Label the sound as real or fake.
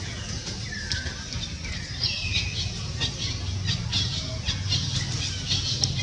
real